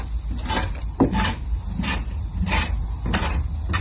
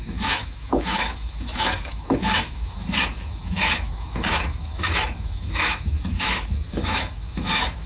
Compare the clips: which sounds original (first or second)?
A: first